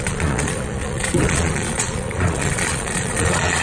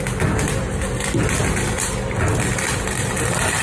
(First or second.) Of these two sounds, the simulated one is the first